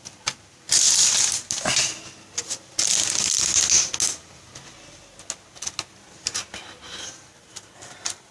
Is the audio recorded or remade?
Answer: recorded